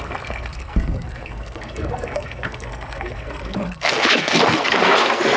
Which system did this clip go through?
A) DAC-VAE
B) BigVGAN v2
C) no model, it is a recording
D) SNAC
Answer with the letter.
D